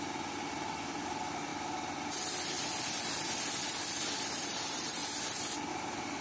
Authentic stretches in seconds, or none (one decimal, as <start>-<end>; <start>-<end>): 1.5-4.3; 5.0-5.7